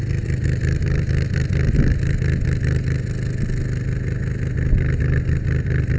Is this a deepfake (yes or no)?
no